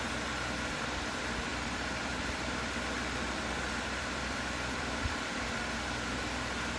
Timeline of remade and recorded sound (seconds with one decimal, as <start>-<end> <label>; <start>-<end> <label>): 0.0-1.5 recorded; 1.5-5.6 remade; 5.6-6.8 recorded